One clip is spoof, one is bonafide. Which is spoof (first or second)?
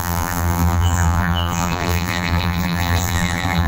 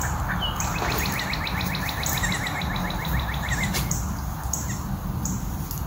first